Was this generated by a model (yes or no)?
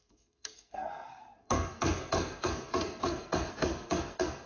yes